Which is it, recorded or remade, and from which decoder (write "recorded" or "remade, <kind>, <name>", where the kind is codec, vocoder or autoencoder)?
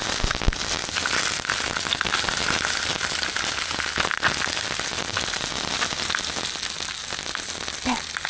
recorded